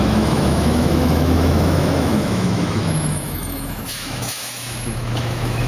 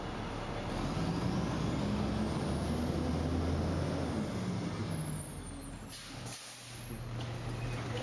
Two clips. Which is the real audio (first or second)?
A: second